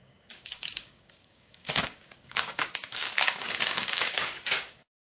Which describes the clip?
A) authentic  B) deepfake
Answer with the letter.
B